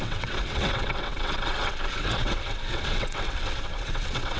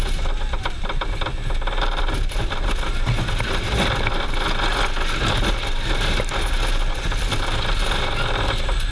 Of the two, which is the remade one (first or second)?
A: first